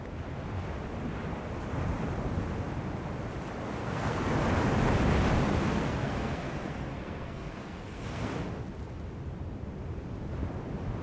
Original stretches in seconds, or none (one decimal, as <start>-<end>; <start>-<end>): 0.0-3.8; 4.3-5.6; 8.3-11.0

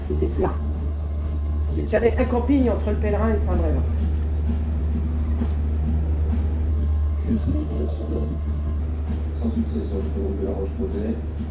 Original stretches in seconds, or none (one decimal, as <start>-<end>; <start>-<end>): 2.2-6.7; 8.8-11.5

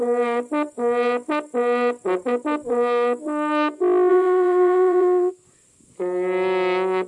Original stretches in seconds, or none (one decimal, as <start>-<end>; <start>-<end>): 0.0-4.1; 5.3-7.1

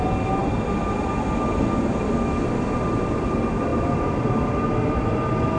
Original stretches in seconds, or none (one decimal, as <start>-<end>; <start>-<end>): 0.0-5.6

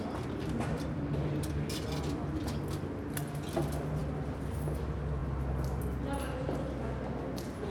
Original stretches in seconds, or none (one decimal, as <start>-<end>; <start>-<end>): 0.0-7.7

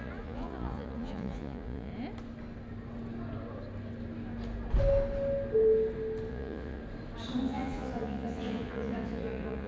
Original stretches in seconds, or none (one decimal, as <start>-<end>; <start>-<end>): 1.9-6.3; 6.8-7.4